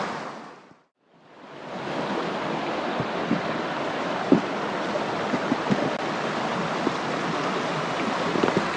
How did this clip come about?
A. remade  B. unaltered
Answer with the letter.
B